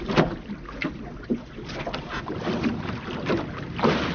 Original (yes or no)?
yes